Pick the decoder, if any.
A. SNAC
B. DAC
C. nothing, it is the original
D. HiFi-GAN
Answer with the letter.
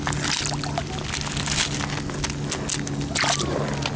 C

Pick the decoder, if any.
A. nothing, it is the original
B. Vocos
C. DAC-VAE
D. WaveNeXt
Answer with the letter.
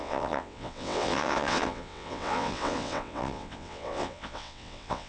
D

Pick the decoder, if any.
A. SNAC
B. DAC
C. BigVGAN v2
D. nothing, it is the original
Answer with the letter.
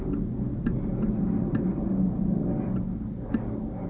D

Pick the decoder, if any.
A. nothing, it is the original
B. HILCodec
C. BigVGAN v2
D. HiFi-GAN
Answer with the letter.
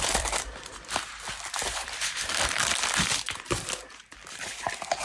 C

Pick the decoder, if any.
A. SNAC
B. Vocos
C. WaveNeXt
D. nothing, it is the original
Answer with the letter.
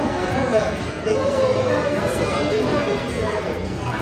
A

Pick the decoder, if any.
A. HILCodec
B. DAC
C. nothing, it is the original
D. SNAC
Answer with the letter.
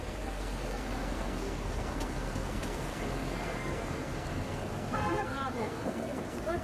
D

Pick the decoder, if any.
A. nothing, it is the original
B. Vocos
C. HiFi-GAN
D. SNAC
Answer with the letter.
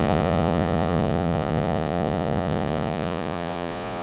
B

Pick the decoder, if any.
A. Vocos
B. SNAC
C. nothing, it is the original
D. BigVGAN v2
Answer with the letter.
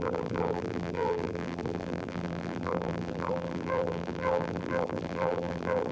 D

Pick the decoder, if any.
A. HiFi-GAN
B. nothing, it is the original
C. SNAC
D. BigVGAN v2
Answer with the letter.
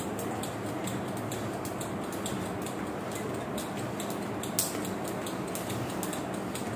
B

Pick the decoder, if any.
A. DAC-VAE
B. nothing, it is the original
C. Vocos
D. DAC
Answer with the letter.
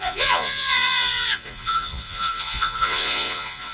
C